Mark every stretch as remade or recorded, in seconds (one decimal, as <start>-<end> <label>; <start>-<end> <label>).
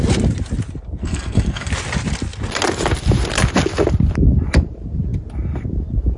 0.0-1.0 recorded; 1.0-1.7 remade; 1.7-6.2 recorded